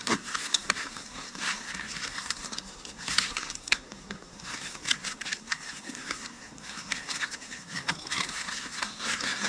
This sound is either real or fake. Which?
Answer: fake